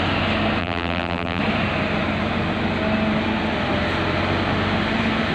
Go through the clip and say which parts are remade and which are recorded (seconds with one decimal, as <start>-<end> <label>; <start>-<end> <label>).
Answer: 0.0-0.6 recorded; 0.6-1.4 remade; 1.4-5.3 recorded